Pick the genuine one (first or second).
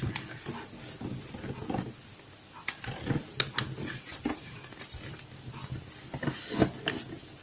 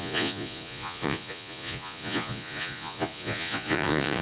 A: first